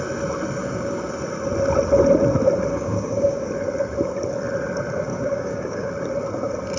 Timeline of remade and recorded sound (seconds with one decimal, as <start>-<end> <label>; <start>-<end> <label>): 0.0-0.6 recorded; 0.6-1.1 remade; 1.1-2.7 recorded; 2.7-3.5 remade; 3.5-5.1 recorded; 5.1-5.9 remade; 5.9-6.8 recorded